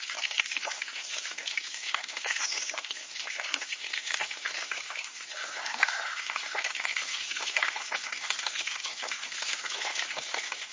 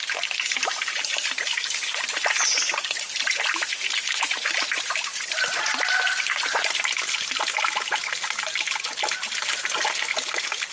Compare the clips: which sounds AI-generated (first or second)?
first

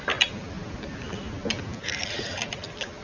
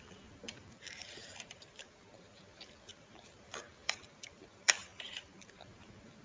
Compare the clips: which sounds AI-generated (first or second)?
second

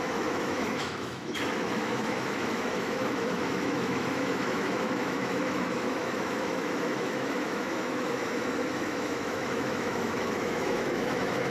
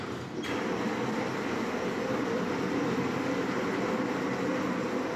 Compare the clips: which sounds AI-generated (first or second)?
first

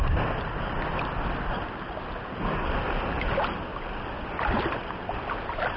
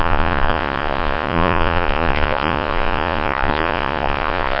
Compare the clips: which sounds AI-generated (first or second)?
second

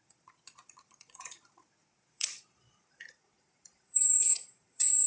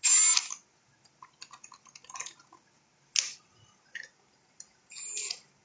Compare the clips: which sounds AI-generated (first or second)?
first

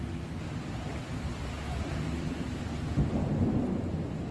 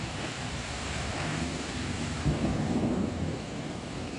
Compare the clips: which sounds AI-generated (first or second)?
second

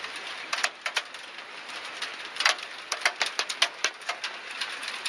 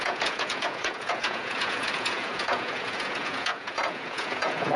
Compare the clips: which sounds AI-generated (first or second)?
second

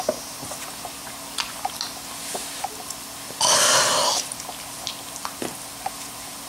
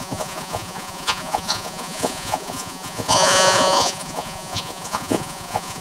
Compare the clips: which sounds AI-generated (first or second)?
second